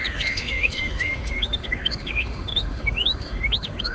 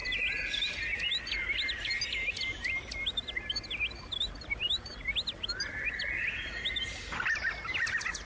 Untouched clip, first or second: second